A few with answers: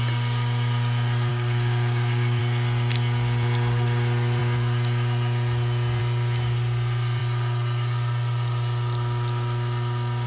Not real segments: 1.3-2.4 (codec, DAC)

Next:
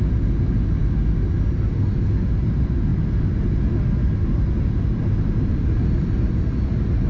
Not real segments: none

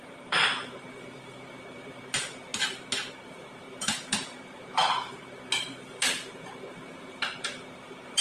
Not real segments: 0.0-2.5 (vocoder, BigVGAN v2); 3.1-8.2

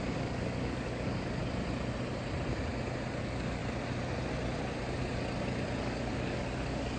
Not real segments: 0.0-1.4 (codec, DAC); 3.2-3.6; 5.8-7.0